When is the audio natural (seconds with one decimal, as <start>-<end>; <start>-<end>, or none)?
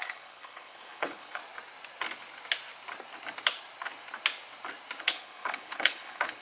1.4-5.0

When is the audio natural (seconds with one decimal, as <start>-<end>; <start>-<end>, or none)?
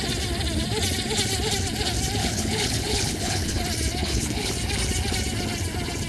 0.0-2.2; 3.6-4.0; 4.5-6.1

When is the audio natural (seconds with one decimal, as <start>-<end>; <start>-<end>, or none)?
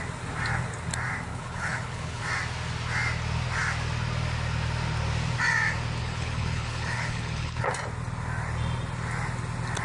0.0-1.3; 2.2-6.0; 7.7-9.8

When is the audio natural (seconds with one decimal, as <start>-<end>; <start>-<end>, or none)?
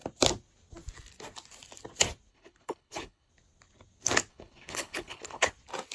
0.0-2.3; 3.3-4.3; 5.5-5.9